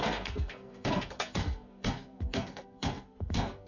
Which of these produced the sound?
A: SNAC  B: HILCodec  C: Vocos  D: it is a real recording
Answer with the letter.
A